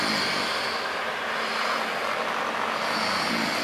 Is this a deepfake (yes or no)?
no